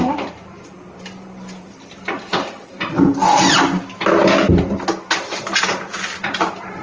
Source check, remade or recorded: recorded